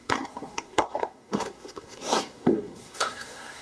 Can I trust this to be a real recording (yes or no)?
no